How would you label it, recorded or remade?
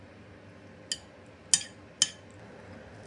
recorded